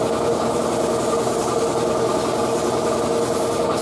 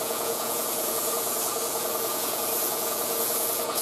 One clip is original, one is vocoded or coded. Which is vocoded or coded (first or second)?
second